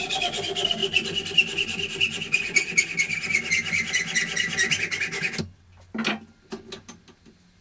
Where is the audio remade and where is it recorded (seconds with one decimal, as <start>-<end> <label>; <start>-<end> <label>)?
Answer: 0.0-7.6 recorded